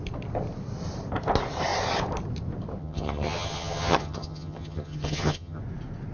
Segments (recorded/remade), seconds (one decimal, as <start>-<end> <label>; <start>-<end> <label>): 0.0-2.8 recorded; 2.8-5.6 remade; 5.6-6.1 recorded

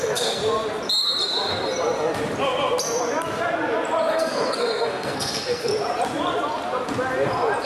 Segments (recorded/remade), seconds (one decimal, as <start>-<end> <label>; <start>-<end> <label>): 0.0-0.4 remade; 0.4-4.1 recorded; 4.1-5.7 remade; 5.7-7.6 recorded

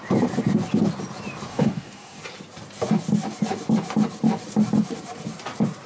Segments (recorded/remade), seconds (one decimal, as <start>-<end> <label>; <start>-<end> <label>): 0.0-1.5 recorded; 1.5-2.2 remade; 2.2-5.9 recorded

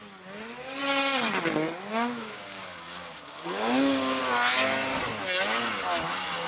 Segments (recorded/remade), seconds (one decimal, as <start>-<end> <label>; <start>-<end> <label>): 0.0-1.9 recorded; 1.9-4.2 remade; 4.2-6.5 recorded

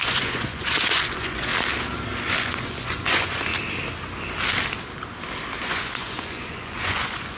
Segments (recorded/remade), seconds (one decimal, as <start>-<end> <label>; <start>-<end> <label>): 0.0-1.5 remade; 1.5-2.4 recorded; 2.4-3.5 remade; 3.5-5.6 recorded; 5.6-7.4 remade

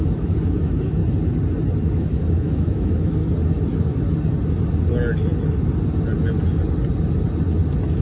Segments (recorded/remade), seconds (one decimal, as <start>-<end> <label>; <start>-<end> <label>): 0.0-1.0 remade; 1.0-1.9 recorded; 1.9-3.2 remade; 3.2-8.0 recorded

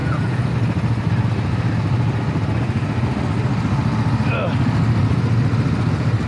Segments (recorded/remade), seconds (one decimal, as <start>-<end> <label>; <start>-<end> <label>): 0.0-0.5 remade; 0.5-6.3 recorded